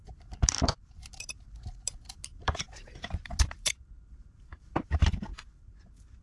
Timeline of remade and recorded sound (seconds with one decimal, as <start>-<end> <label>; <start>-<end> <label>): 0.0-6.2 remade